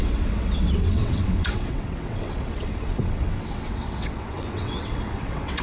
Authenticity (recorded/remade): remade